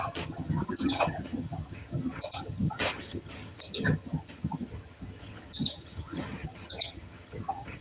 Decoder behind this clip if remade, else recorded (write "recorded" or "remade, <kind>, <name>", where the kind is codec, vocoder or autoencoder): remade, vocoder, HiFi-GAN